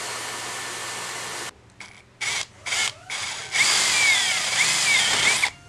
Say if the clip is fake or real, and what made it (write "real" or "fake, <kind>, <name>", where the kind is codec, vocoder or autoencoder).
real